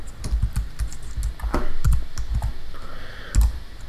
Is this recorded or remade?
recorded